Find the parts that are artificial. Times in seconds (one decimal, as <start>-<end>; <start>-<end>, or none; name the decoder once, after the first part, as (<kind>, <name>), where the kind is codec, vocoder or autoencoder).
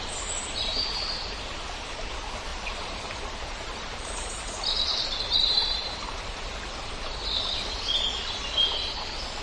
2.5-6.5 (vocoder, BigVGAN v2)